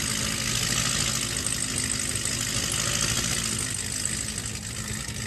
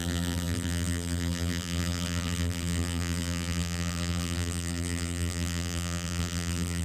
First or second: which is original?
first